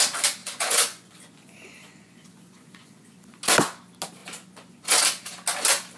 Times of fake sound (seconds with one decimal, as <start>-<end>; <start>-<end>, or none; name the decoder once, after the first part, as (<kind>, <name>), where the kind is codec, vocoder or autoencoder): 0.4-3.4 (vocoder, Vocos); 4.2-5.0